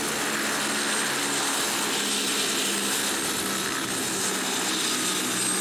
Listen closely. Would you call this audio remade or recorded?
recorded